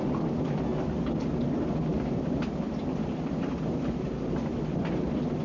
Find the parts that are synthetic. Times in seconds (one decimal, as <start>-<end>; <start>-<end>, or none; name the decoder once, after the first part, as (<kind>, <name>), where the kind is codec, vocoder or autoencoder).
1.9-5.4 (vocoder, BigVGAN v2)